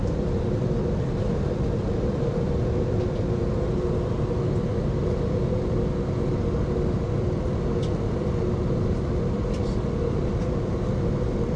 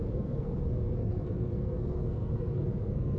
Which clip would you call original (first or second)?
first